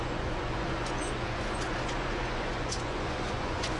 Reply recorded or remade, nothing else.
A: remade